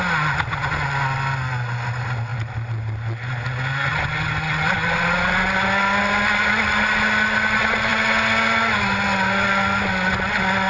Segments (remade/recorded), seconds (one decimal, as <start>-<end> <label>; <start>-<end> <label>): 0.0-10.7 recorded